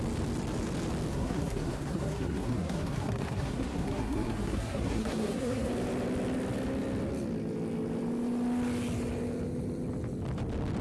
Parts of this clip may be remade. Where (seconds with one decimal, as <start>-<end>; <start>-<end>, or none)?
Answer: 1.1-5.7